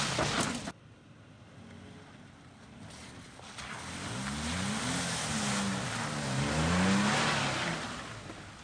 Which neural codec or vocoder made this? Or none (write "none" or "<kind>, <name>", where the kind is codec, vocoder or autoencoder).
none